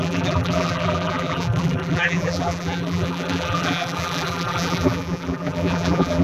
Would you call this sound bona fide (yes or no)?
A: no